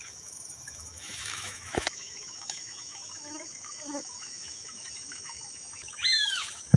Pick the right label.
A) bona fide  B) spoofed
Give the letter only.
B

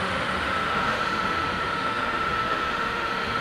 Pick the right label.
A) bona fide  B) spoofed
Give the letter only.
B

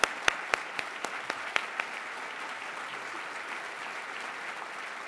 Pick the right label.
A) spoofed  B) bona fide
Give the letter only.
B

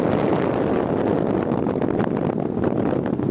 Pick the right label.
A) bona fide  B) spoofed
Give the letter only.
A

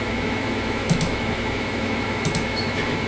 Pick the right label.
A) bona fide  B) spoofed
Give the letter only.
B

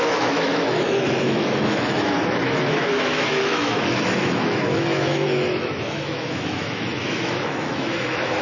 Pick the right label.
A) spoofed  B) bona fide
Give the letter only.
A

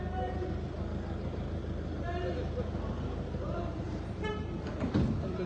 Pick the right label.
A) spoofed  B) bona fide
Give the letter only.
B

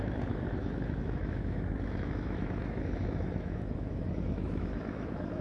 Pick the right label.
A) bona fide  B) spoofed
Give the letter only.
B